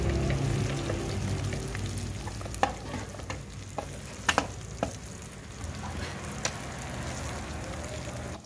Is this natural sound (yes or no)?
yes